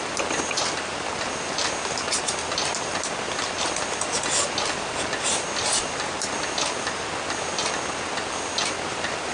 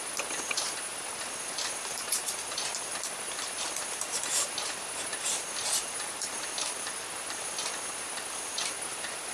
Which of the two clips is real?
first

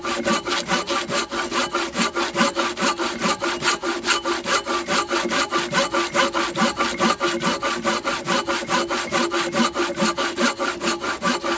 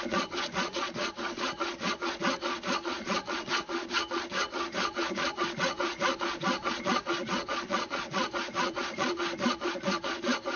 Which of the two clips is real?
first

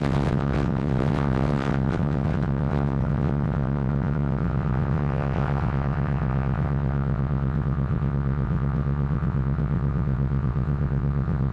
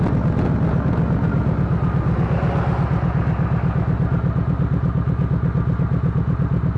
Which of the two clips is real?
second